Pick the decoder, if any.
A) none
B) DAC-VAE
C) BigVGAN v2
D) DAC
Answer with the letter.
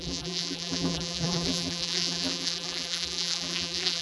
C